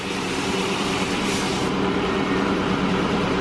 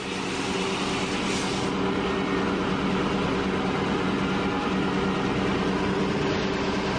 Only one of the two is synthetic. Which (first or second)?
first